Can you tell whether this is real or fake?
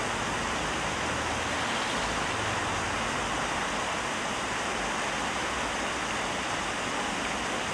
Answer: real